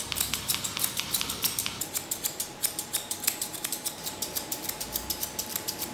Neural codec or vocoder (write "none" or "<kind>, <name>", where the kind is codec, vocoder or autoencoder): vocoder, BigVGAN v2